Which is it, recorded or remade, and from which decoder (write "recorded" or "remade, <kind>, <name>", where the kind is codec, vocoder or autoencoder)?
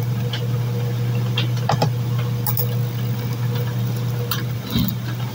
recorded